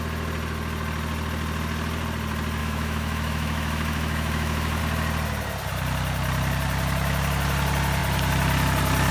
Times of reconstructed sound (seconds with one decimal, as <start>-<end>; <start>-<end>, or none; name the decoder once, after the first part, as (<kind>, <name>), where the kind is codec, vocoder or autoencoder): 2.6-4.8 (autoencoder, DAC-VAE)